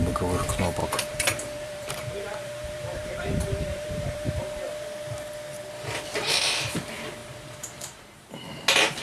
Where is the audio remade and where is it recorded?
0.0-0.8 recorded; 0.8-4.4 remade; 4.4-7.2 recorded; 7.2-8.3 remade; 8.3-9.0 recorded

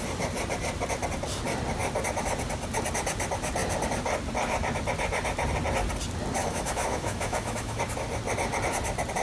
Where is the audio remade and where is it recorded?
0.0-6.4 recorded; 6.4-7.8 remade; 7.8-9.2 recorded